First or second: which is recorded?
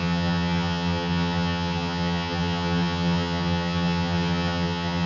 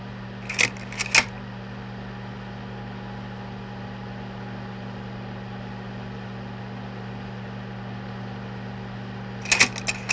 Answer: second